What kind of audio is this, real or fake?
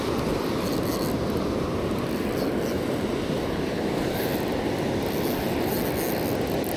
real